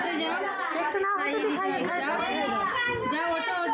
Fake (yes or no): no